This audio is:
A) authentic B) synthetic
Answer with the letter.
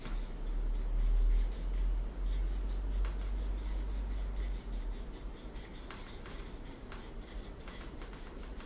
A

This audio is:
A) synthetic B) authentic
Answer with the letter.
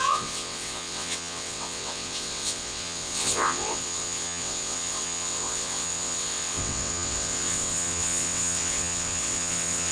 A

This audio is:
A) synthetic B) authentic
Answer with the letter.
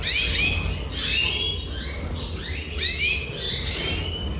B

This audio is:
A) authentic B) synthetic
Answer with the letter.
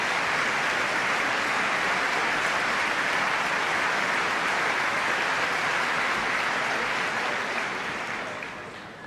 B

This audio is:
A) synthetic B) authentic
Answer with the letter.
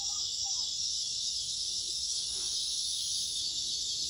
A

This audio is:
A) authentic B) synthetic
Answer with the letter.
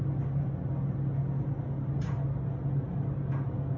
A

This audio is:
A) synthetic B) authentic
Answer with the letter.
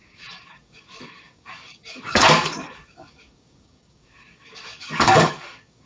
A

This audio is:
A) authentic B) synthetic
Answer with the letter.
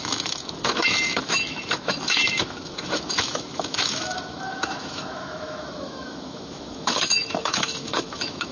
B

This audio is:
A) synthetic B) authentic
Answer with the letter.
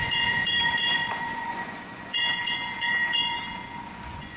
A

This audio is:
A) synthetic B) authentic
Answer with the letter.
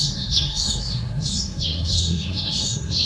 A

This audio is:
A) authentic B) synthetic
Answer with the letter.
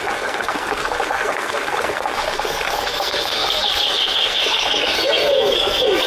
B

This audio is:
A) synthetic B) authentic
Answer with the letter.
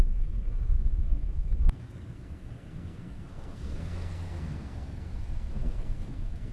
A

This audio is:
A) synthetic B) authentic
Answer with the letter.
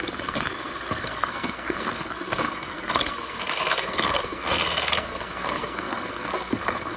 A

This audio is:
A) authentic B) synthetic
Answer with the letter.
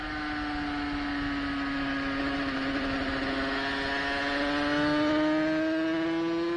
A